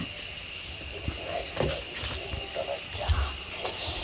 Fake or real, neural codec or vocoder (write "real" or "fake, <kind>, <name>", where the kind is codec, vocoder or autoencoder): real